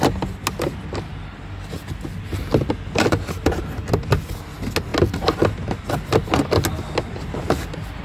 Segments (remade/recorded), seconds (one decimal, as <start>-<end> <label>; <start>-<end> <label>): 0.0-8.0 recorded